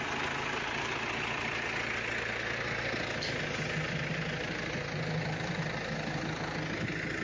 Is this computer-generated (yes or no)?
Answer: no